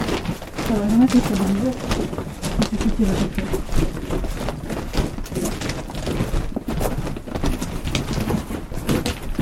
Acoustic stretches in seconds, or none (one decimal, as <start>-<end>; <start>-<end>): 0.0-9.4

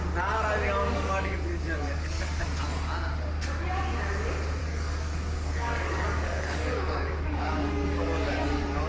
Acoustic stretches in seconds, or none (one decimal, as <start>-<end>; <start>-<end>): 0.0-0.8; 2.4-4.6

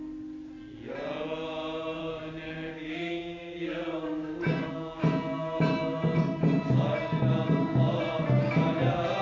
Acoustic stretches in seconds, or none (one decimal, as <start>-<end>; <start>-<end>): 0.0-2.0; 4.7-9.2

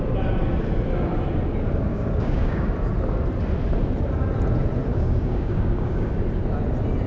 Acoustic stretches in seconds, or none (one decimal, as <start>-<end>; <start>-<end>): 0.0-1.9; 2.7-4.9; 6.1-7.1

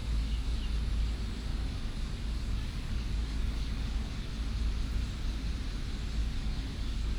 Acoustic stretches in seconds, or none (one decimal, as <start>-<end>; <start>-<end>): 0.6-1.5; 4.3-6.2

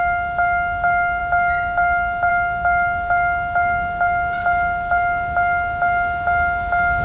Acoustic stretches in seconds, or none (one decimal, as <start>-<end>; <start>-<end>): 0.0-7.0

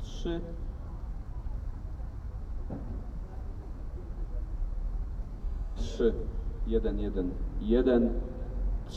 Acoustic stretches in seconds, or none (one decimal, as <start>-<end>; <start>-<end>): 0.0-5.4; 6.0-9.0

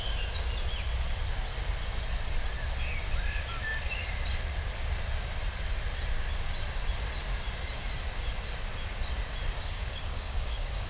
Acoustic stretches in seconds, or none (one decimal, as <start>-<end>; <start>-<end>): 0.0-9.6